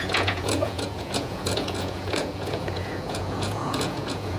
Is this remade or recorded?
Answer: remade